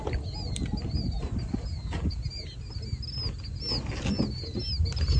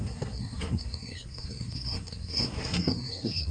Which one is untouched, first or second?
first